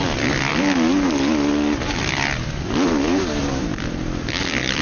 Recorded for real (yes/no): yes